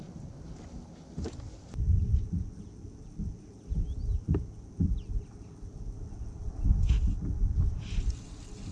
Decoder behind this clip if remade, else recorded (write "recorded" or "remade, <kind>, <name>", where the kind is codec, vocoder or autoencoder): recorded